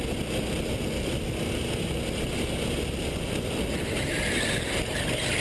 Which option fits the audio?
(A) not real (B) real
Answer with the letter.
B